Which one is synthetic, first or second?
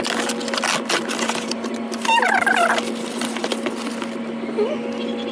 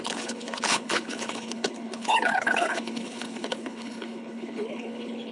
second